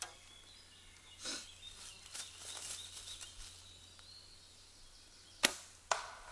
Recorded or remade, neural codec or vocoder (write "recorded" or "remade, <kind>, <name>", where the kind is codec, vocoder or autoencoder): recorded